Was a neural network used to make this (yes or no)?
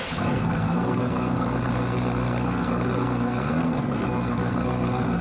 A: yes